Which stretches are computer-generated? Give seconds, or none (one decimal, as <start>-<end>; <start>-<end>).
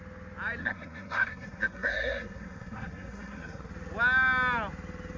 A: 0.6-3.7